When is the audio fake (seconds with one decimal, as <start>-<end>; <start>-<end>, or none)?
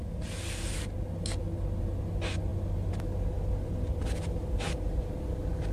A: none